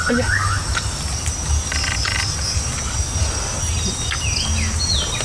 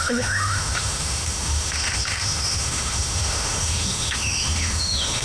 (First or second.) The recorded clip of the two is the first